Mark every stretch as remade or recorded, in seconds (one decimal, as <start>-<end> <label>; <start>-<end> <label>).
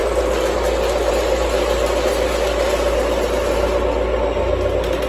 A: 0.0-5.1 recorded